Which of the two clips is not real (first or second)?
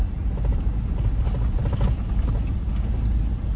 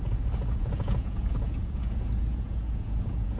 second